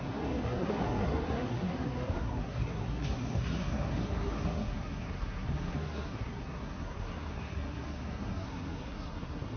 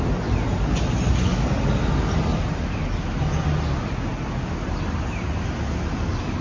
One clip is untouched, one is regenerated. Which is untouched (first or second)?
second